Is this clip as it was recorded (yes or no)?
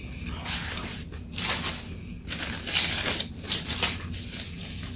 yes